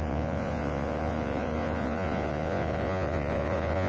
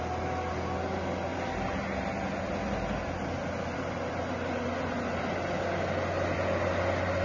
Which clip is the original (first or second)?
second